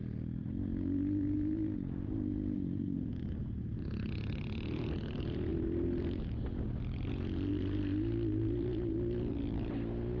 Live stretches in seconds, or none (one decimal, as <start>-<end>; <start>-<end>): 0.0-10.2